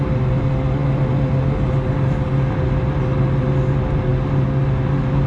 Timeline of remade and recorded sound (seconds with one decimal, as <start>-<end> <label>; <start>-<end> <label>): 0.0-5.3 recorded